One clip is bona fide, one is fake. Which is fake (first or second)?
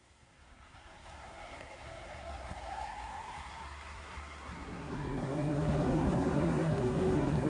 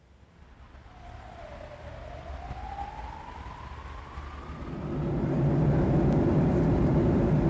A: first